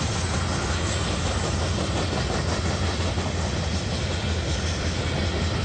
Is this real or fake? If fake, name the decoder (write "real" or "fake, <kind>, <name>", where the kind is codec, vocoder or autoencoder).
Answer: real